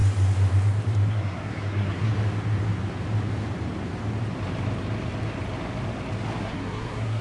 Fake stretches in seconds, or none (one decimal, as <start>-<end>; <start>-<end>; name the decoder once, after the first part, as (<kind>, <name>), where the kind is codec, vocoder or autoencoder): 1.1-2.1 (codec, SNAC); 6.4-7.2